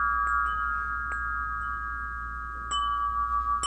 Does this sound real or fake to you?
real